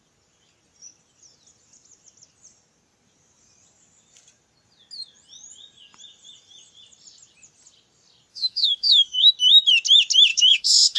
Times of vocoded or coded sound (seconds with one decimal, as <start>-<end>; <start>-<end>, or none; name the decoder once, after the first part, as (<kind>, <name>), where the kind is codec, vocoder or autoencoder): 8.3-9.3 (autoencoder, DAC-VAE); 10.3-11.0